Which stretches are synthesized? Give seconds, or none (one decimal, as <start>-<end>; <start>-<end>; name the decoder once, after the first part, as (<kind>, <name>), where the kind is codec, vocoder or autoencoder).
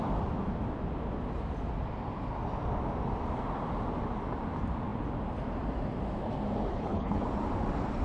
6.7-7.2 (codec, HILCodec)